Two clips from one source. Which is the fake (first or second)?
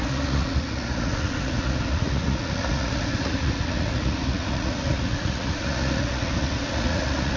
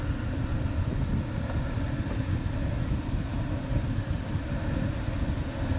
first